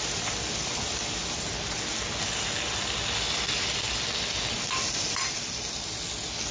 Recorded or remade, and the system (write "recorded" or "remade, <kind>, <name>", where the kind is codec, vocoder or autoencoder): recorded